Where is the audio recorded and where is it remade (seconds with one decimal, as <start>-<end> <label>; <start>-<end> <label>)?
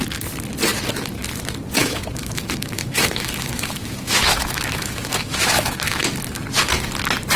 0.0-1.8 recorded; 1.8-6.0 remade; 6.0-7.4 recorded